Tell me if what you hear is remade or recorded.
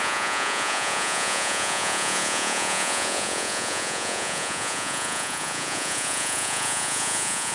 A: remade